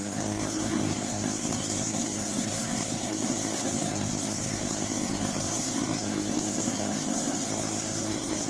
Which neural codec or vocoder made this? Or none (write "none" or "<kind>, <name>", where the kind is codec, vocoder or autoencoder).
codec, SNAC